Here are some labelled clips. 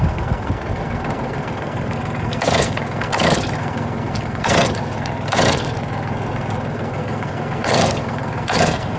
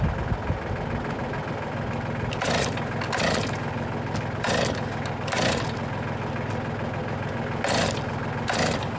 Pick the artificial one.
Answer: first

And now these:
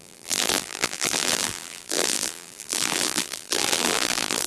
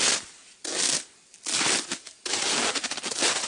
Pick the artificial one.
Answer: first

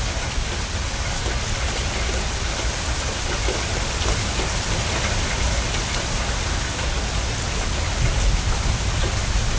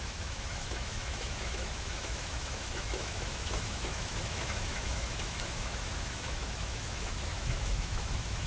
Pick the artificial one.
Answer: second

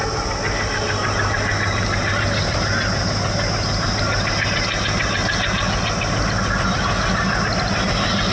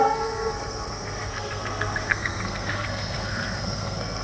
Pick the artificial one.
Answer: second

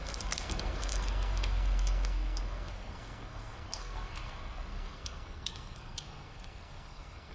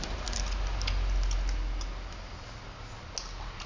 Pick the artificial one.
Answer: first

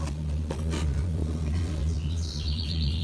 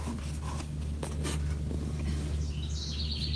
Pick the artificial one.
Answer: first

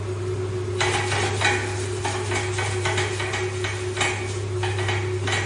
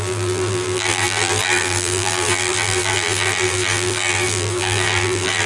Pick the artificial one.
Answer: second